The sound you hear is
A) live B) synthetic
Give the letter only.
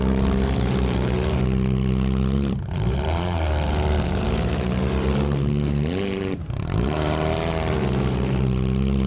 B